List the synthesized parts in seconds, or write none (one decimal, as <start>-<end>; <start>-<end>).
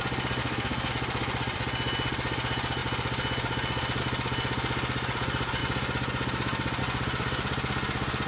0.4-0.9